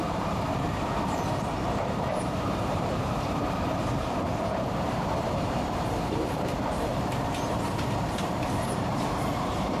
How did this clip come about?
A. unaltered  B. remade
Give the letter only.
B